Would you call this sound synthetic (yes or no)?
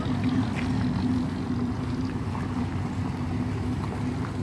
no